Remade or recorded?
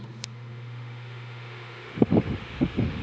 remade